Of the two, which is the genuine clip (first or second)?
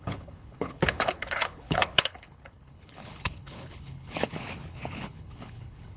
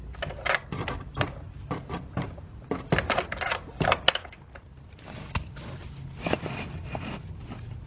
second